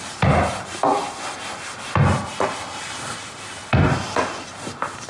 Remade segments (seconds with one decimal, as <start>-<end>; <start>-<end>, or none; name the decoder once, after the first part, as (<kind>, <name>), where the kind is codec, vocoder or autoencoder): none